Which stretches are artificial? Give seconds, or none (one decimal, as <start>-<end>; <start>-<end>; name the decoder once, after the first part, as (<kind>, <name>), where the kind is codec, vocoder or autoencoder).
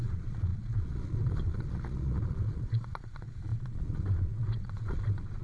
0.0-5.4 (vocoder, Vocos)